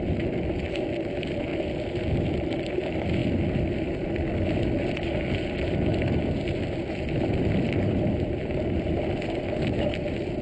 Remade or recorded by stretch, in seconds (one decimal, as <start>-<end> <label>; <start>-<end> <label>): 0.0-10.4 recorded